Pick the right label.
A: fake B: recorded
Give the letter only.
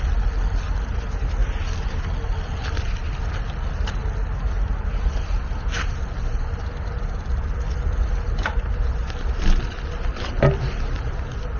B